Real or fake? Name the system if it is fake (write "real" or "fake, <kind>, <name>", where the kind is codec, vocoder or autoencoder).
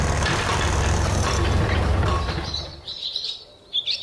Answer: fake, vocoder, BigVGAN v2